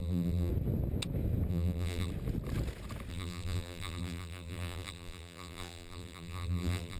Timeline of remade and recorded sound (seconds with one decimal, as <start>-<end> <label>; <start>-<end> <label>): 0.0-0.5 remade; 0.5-1.5 recorded; 1.5-2.1 remade; 2.1-3.1 recorded; 3.1-7.0 remade